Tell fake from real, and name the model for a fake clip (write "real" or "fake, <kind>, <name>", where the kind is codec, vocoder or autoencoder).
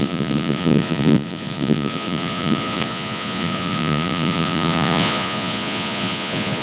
fake, vocoder, Vocos